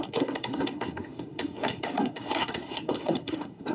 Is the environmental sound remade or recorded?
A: remade